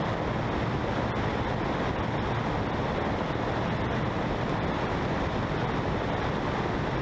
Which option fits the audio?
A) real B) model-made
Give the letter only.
A